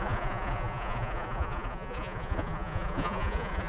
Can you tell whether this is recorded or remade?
remade